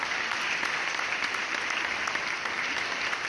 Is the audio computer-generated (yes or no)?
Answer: no